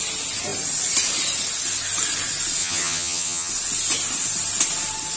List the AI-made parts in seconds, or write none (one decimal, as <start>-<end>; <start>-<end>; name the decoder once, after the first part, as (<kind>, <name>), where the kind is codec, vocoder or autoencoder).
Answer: 2.6-3.5 (vocoder, HiFi-GAN)